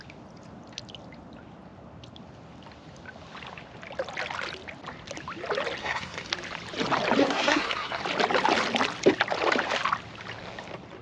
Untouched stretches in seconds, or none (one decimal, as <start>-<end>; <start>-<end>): 0.0-5.8; 6.3-7.2; 8.0-11.0